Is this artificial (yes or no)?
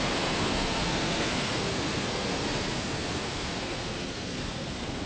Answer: yes